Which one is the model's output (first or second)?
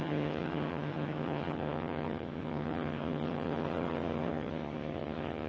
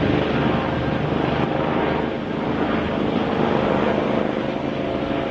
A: first